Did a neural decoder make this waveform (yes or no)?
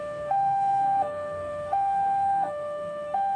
yes